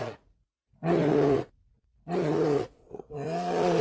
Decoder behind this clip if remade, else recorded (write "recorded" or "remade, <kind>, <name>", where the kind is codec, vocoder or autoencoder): remade, vocoder, Vocos